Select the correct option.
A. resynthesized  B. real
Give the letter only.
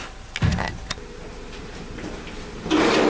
B